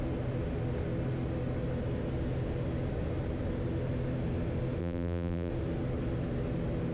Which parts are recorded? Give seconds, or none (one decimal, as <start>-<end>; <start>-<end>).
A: 0.0-4.8; 5.5-6.9